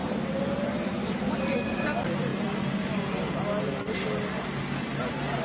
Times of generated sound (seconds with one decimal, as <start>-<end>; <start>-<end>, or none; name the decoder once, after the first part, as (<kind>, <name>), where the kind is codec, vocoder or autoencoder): none

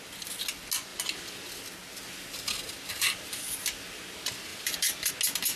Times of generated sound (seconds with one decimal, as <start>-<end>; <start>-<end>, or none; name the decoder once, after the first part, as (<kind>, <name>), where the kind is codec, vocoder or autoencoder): 4.5-5.1 (vocoder, BigVGAN v2)

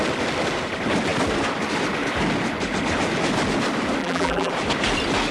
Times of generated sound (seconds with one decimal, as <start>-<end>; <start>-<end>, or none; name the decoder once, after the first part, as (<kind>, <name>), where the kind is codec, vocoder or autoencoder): 4.0-4.5 (vocoder, BigVGAN v2)

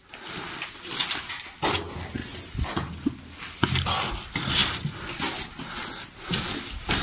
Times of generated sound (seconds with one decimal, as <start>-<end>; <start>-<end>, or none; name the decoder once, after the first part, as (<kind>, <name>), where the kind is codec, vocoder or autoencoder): 2.2-2.8 (vocoder, BigVGAN v2)

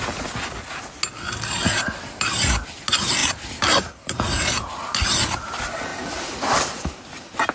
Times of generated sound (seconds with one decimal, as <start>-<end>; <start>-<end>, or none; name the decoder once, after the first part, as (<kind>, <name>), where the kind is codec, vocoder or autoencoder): 3.2-4.7 (vocoder, BigVGAN v2)